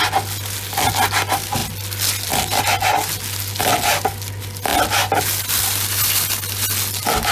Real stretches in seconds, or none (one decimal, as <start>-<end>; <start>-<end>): 0.0-7.3